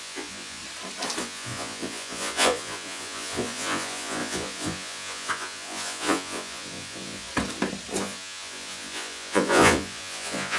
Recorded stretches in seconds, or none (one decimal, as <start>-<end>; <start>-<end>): 0.6-1.2; 7.3-8.0